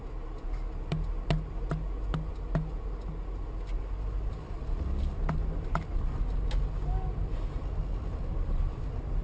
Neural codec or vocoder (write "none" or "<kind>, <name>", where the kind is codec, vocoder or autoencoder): none